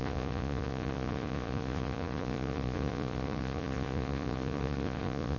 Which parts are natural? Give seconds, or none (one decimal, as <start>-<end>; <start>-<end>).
none